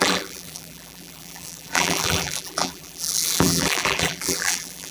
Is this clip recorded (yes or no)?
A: no